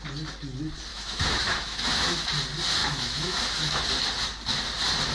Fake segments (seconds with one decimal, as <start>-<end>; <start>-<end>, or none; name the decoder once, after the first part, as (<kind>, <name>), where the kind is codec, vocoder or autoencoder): 0.9-2.3 (autoencoder, DAC-VAE); 2.8-3.9